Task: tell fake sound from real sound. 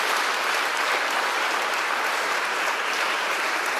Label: fake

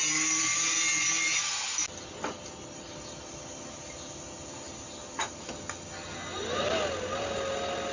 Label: real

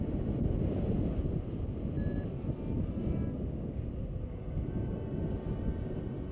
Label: real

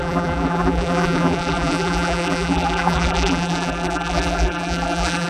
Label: fake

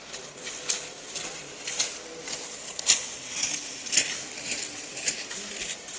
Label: real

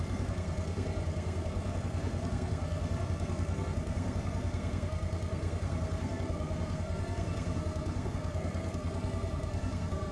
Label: fake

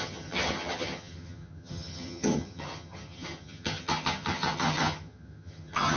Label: fake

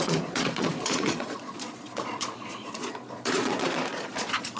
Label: fake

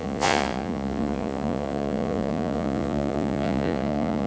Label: fake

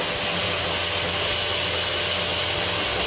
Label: real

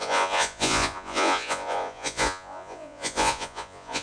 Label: fake